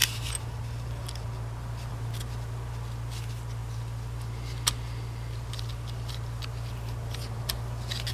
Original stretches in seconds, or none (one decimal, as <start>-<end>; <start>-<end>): 0.0-8.1